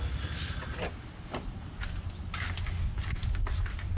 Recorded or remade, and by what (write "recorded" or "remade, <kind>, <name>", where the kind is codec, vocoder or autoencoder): recorded